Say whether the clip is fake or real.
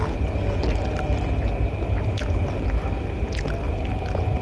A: real